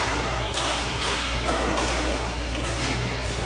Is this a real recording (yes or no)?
no